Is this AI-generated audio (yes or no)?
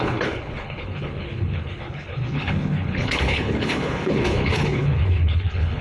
yes